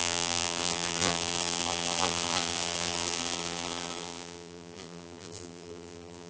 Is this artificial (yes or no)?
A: yes